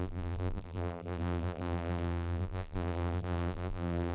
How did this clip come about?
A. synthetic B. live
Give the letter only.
A